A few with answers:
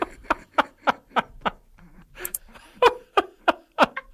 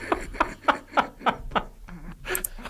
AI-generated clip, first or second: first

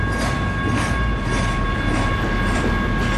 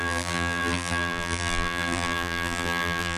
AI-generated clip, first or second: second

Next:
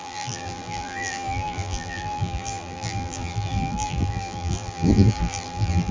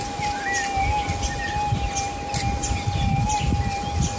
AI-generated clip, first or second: first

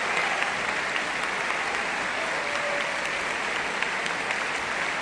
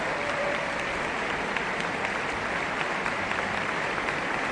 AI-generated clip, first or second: second